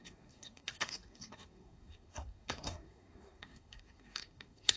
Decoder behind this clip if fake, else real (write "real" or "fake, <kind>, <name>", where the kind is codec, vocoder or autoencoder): fake, codec, SNAC